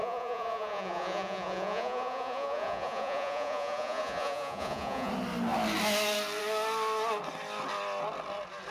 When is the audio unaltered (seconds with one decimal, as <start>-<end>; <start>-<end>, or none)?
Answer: 5.1-8.7